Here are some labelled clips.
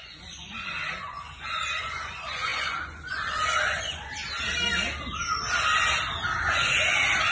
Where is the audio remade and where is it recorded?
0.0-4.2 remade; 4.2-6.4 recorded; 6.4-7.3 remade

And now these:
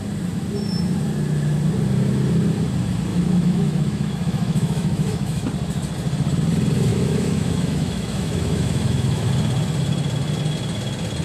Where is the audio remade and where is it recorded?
0.0-3.1 recorded; 3.1-5.5 remade; 5.5-6.9 recorded; 6.9-9.3 remade; 9.3-11.2 recorded

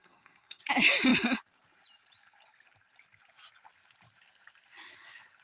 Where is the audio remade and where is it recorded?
0.0-0.6 remade; 0.6-5.4 recorded

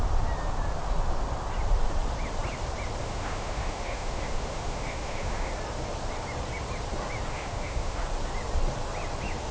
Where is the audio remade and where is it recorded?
0.0-3.0 recorded; 3.0-5.5 remade; 5.5-7.3 recorded; 7.3-8.0 remade; 8.0-9.5 recorded

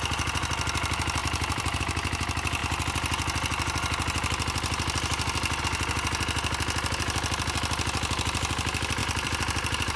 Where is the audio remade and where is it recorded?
0.0-1.2 recorded; 1.2-1.8 remade; 1.8-9.0 recorded; 9.0-10.0 remade

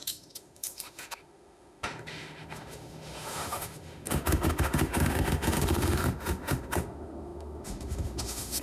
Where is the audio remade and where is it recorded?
0.0-8.6 remade

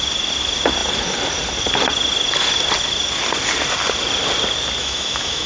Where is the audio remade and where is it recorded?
0.0-4.8 recorded; 4.8-5.5 remade